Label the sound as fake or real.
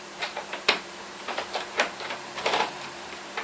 fake